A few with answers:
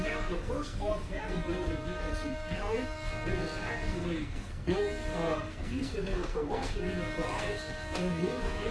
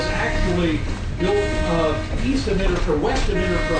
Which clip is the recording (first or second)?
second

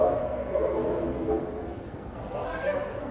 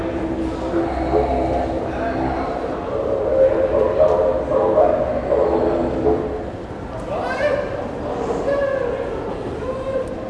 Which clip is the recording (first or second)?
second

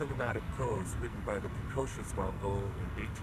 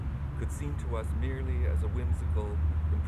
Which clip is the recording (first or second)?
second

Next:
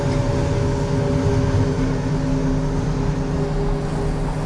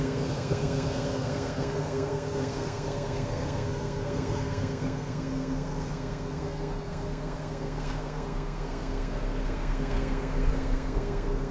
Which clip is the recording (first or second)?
first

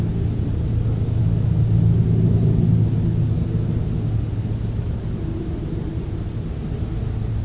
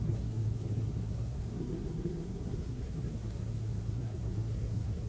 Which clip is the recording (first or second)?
first